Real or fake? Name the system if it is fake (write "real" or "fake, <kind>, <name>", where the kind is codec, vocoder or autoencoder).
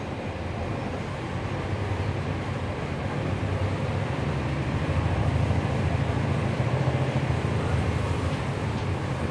fake, vocoder, BigVGAN v2